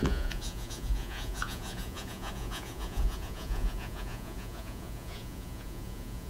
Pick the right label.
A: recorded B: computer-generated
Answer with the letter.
B